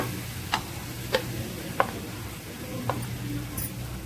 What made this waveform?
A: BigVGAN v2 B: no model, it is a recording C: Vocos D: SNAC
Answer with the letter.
B